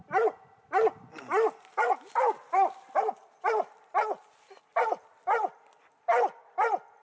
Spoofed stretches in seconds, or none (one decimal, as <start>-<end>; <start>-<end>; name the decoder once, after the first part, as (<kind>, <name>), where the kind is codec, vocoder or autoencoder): none